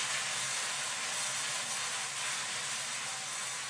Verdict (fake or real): real